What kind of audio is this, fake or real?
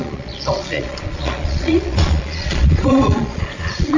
fake